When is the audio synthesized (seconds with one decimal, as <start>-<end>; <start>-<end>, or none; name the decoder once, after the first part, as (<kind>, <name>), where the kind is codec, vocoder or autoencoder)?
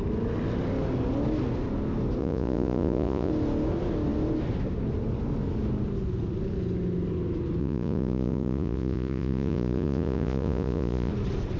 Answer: 2.2-3.3 (vocoder, Vocos); 7.6-11.1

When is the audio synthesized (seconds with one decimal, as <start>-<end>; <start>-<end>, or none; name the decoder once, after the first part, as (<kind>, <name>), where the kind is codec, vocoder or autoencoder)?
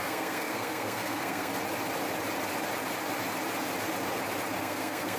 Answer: 0.0-1.5 (codec, SNAC); 4.6-5.2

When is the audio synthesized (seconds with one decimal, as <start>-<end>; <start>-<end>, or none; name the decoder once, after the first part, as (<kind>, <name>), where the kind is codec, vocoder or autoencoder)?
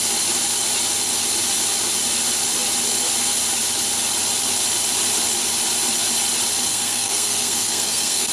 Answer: 6.7-8.3 (codec, SNAC)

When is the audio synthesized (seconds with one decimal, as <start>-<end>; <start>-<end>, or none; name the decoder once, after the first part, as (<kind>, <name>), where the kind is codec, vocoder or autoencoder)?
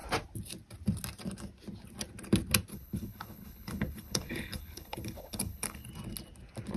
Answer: 2.7-5.9 (codec, HILCodec)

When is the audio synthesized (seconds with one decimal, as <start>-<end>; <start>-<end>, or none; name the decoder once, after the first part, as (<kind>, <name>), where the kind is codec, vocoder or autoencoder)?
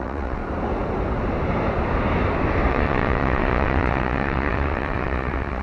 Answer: 0.0-0.4 (vocoder, WaveNeXt); 2.7-5.6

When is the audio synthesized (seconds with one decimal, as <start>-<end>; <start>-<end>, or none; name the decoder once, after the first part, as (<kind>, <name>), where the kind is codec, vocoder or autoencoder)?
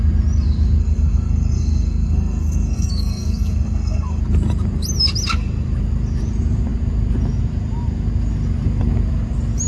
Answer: 0.8-4.2 (codec, SNAC)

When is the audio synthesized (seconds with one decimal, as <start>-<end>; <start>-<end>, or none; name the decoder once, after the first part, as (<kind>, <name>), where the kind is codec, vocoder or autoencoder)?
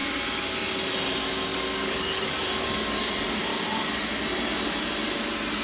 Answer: 1.5-3.1 (codec, DAC); 3.5-4.1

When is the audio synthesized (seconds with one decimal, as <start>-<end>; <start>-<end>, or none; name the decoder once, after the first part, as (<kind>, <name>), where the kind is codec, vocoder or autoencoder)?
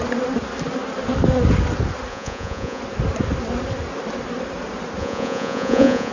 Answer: 2.1-2.8 (vocoder, Vocos); 5.0-6.1